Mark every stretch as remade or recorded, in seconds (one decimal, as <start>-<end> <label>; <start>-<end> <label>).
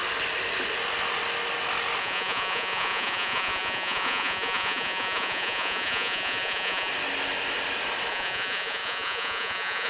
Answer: 0.0-2.0 recorded; 2.0-6.9 remade; 6.9-8.1 recorded; 8.1-9.9 remade